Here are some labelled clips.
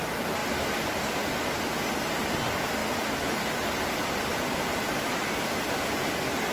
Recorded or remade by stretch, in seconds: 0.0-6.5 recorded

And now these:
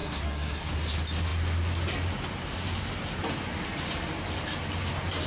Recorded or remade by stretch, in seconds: 0.0-0.7 remade; 0.7-5.3 recorded

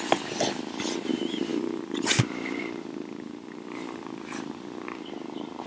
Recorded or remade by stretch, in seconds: 0.0-5.7 recorded

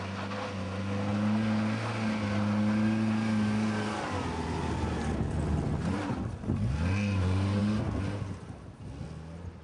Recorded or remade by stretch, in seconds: 0.0-9.6 recorded

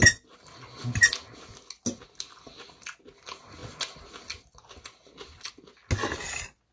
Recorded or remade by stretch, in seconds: 0.0-6.7 recorded